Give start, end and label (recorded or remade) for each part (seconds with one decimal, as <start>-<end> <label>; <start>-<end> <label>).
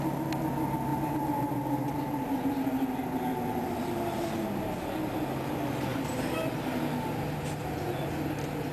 0.0-0.9 recorded; 0.9-2.5 remade; 2.5-5.9 recorded; 5.9-6.5 remade; 6.5-8.7 recorded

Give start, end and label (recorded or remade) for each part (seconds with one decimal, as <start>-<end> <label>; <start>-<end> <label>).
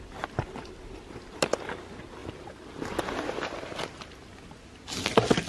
0.0-5.5 recorded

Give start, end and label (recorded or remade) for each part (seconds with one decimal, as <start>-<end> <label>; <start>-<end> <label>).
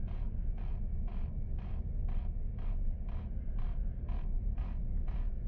0.0-1.1 remade; 1.1-4.4 recorded; 4.4-5.5 remade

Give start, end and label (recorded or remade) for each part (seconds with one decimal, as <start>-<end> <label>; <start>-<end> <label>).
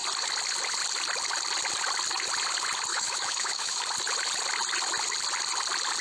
0.0-2.9 recorded; 2.9-3.8 remade; 3.8-6.0 recorded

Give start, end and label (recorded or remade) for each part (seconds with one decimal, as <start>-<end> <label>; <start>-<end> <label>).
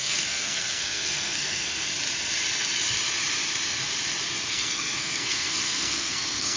0.0-1.9 remade; 1.9-4.5 recorded; 4.5-6.6 remade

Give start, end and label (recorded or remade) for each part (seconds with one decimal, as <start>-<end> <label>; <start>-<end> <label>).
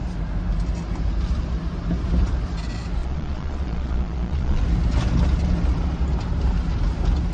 0.0-3.0 recorded; 3.0-4.6 remade; 4.6-7.3 recorded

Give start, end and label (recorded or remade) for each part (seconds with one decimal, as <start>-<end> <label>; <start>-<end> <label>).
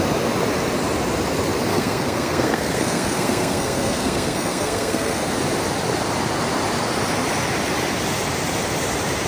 0.0-1.7 recorded; 1.7-5.2 remade; 5.2-9.3 recorded